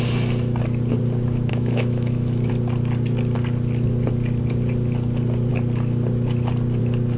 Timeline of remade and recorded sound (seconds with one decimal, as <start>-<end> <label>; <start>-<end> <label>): 0.0-1.5 recorded; 1.5-2.5 remade; 2.5-7.2 recorded

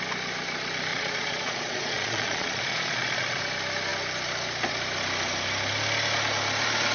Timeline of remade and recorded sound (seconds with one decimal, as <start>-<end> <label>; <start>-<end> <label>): 0.0-0.9 recorded; 0.9-3.4 remade; 3.4-6.9 recorded

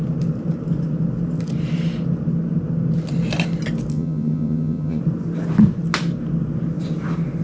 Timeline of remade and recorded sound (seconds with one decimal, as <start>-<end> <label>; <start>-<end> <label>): 0.0-3.9 recorded; 3.9-5.0 remade; 5.0-7.4 recorded

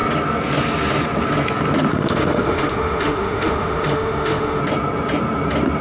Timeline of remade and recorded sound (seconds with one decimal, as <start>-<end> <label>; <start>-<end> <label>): 0.0-1.9 recorded; 1.9-4.6 remade; 4.6-5.8 recorded

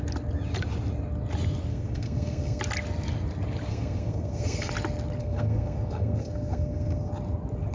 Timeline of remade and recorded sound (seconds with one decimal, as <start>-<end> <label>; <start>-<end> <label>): 0.0-1.7 recorded; 1.7-2.6 remade; 2.6-3.7 recorded; 3.7-4.7 remade; 4.7-5.2 recorded; 5.2-7.1 remade; 7.1-7.7 recorded

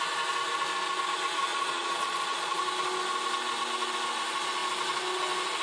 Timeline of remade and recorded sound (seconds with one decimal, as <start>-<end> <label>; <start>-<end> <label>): 0.0-1.5 recorded; 1.5-2.6 remade; 2.6-5.6 recorded

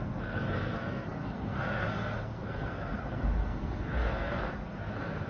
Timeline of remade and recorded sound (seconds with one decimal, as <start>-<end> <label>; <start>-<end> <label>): 0.0-5.3 remade

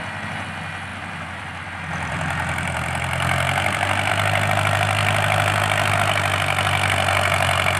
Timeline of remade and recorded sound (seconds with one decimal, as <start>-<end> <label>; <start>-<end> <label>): 0.0-0.9 recorded; 0.9-4.1 remade; 4.1-7.8 recorded